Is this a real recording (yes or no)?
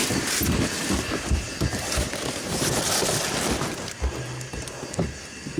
yes